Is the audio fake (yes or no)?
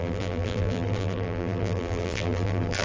yes